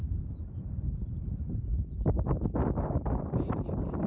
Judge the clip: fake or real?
fake